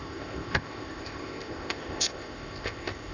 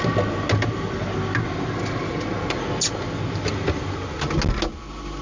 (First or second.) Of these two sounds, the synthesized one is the first